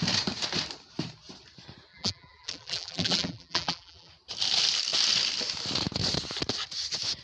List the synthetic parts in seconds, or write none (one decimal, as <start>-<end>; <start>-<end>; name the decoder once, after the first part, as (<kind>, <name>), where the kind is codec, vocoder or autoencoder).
1.9-4.1 (vocoder, BigVGAN v2)